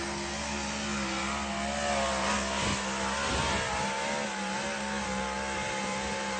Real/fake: real